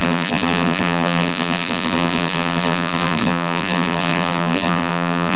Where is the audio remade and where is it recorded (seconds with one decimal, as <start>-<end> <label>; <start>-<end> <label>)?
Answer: 0.0-5.4 remade